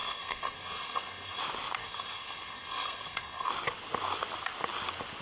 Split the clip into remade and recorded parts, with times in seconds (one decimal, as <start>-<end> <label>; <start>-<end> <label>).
0.0-1.4 remade; 1.4-1.8 recorded; 1.8-3.5 remade; 3.5-5.2 recorded